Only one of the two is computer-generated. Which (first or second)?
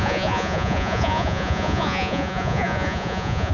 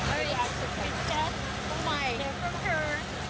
first